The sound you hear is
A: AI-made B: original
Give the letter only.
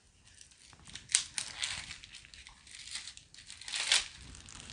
B